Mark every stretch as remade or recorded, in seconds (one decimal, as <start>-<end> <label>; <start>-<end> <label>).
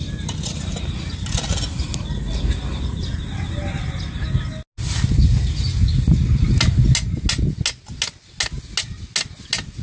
0.0-9.8 recorded